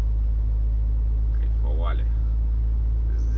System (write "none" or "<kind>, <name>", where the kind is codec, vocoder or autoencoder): none